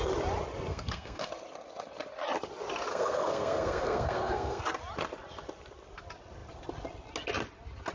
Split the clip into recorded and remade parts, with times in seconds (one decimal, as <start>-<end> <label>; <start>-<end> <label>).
0.0-0.7 recorded; 0.7-1.3 remade; 1.3-2.9 recorded; 2.9-4.6 remade; 4.6-7.9 recorded